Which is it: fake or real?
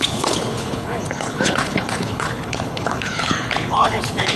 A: fake